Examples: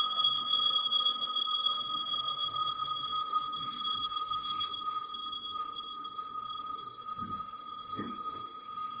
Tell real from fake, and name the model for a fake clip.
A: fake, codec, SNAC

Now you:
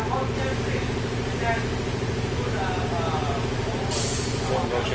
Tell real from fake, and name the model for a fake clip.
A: real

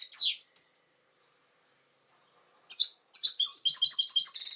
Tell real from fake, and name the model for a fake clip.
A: real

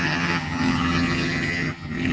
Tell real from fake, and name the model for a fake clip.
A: fake, vocoder, HiFi-GAN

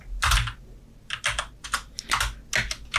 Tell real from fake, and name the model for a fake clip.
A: real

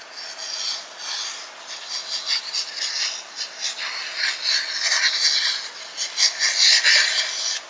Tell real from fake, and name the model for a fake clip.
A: real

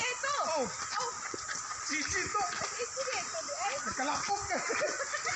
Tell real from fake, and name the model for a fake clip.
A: real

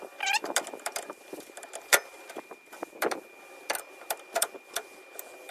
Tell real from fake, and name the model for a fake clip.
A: real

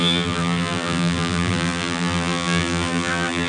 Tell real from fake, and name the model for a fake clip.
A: fake, vocoder, BigVGAN v2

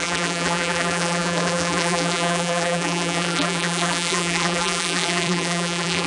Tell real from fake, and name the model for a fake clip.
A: fake, vocoder, BigVGAN v2